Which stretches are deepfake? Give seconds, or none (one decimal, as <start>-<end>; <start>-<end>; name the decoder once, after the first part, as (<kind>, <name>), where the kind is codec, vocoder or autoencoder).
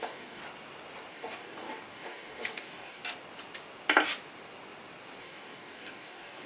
0.0-0.4 (codec, DAC); 1.1-3.0; 5.2-6.5